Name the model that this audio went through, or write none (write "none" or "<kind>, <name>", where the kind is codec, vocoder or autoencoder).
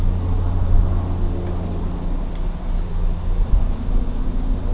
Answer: none